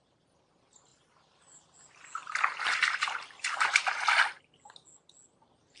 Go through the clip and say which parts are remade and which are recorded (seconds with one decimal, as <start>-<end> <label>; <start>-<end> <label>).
0.0-5.8 recorded